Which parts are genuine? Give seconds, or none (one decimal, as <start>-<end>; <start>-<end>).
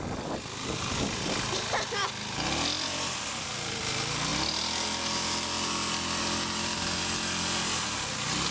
0.0-8.5